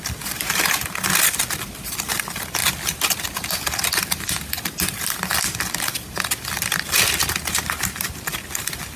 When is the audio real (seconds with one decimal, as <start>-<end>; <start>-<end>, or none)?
0.0-9.0